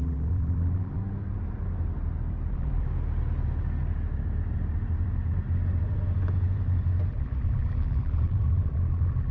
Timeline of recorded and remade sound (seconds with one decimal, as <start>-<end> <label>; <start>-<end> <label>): 0.0-1.0 remade; 1.0-2.5 recorded; 2.5-2.9 remade; 2.9-7.1 recorded; 7.1-9.3 remade

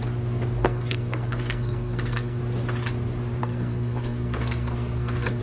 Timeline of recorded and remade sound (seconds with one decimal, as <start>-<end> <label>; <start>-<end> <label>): 0.0-0.6 recorded; 0.6-2.4 remade; 2.4-3.4 recorded; 3.4-5.4 remade